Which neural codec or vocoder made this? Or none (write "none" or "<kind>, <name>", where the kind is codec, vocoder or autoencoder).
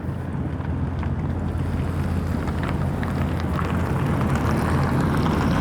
none